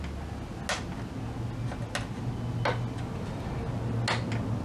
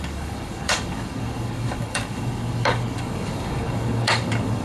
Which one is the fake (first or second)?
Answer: second